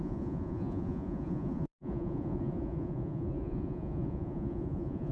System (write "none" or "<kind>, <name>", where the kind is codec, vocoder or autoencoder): vocoder, Vocos